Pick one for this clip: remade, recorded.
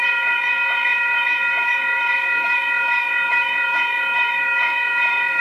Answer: remade